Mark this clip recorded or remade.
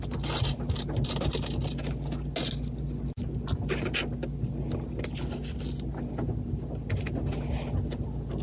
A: recorded